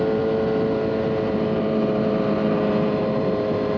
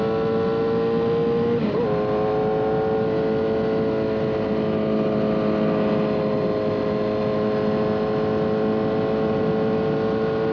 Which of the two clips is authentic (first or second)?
second